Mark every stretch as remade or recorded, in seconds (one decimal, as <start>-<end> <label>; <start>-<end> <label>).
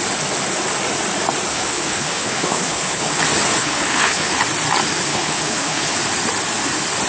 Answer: 0.0-1.5 recorded; 1.5-3.2 remade; 3.2-3.6 recorded; 3.6-4.3 remade; 4.3-5.1 recorded; 5.1-6.0 remade; 6.0-7.1 recorded